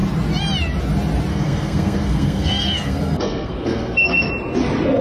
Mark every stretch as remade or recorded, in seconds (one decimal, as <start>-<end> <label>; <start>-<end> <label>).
0.0-1.3 recorded; 1.3-4.3 remade; 4.3-5.0 recorded